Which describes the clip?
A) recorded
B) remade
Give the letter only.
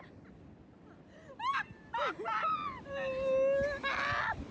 A